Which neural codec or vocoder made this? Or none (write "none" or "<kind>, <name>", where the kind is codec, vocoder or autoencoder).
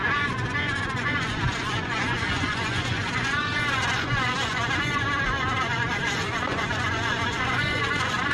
vocoder, Vocos